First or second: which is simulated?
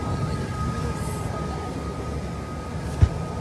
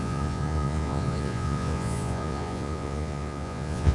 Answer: second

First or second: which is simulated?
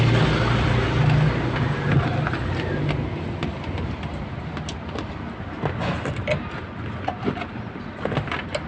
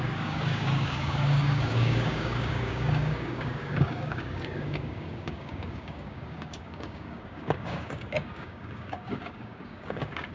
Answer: second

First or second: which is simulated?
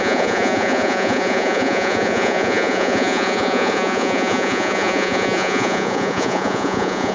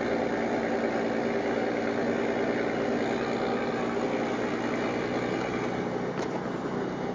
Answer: first